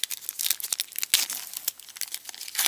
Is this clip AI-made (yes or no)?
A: no